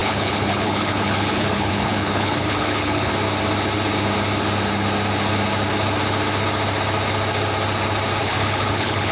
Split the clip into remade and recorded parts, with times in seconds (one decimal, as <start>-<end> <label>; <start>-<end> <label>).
0.0-3.1 remade; 3.1-8.2 recorded; 8.2-9.1 remade

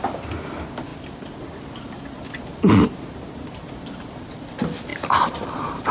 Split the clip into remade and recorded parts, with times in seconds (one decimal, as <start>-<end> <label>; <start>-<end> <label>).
0.0-2.5 recorded; 2.5-3.7 remade; 3.7-4.9 recorded; 4.9-5.9 remade

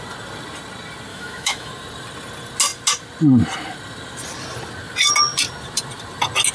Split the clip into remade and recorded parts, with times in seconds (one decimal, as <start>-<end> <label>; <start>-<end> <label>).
0.0-1.1 recorded; 1.1-1.7 remade; 1.7-6.5 recorded

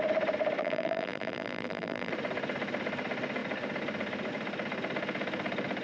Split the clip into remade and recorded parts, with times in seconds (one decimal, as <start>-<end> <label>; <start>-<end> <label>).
0.0-0.6 recorded; 0.6-2.1 remade; 2.1-5.8 recorded

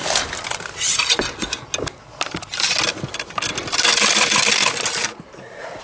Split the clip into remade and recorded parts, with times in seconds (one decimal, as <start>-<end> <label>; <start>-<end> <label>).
0.0-5.8 recorded

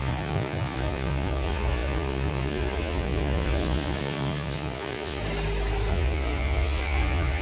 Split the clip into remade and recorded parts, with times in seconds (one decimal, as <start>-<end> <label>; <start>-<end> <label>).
0.0-5.2 remade; 5.2-5.9 recorded; 5.9-7.4 remade